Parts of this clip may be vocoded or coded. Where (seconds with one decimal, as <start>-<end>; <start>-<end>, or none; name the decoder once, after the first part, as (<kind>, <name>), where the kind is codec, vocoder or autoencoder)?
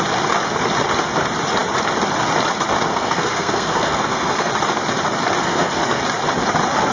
2.9-4.5 (codec, SNAC); 5.4-6.0